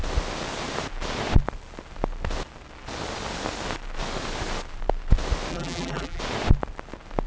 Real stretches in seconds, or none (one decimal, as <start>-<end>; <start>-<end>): 0.0-5.5; 6.2-7.3